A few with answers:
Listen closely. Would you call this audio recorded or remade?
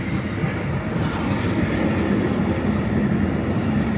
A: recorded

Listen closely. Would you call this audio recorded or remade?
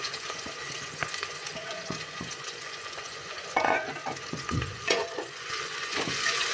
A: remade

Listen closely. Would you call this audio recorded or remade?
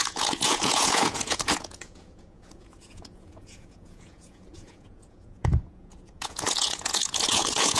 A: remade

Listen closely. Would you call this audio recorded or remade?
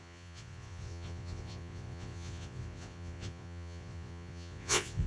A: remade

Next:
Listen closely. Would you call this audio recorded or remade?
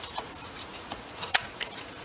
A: remade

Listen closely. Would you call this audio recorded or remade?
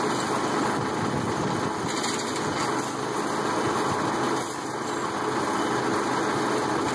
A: recorded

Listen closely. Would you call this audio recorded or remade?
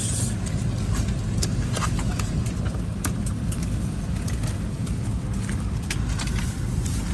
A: recorded